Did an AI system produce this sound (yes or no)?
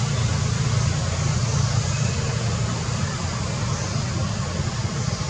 no